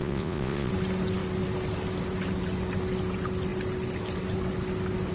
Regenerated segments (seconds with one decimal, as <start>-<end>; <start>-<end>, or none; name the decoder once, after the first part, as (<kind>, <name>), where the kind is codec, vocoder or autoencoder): 0.0-0.7 (vocoder, Vocos)